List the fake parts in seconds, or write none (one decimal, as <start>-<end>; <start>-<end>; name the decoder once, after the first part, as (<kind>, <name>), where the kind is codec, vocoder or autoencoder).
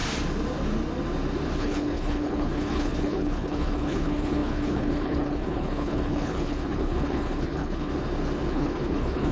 1.6-7.9 (codec, HILCodec); 8.5-9.3